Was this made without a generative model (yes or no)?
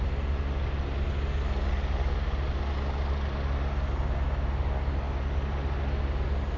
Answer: yes